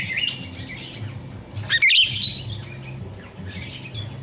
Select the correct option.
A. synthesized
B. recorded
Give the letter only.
B